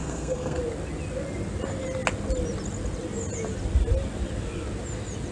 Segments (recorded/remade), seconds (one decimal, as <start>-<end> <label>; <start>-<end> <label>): 0.0-0.6 remade; 0.6-5.3 recorded